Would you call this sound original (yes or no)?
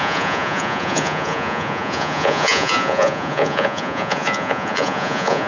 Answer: no